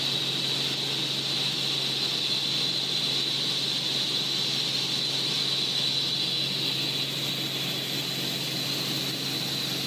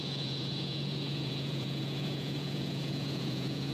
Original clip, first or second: first